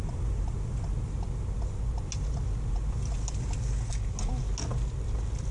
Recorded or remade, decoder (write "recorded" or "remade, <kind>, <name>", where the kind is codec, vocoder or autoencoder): recorded